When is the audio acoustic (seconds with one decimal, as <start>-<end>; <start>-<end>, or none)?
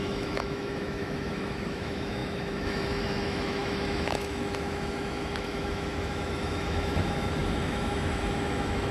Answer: none